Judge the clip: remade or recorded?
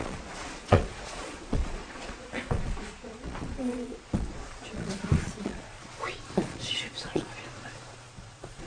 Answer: remade